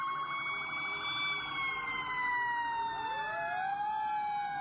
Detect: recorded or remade recorded